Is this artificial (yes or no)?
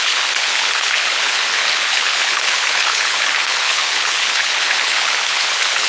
yes